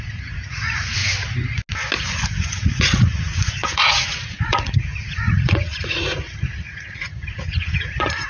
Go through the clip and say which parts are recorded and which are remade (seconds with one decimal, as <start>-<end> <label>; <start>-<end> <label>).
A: 0.0-1.0 remade; 1.0-2.0 recorded; 2.0-8.3 remade